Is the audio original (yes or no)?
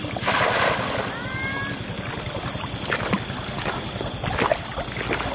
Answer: yes